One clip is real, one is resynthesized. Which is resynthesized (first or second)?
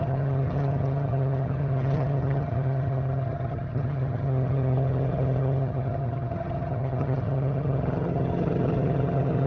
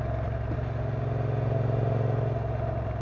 first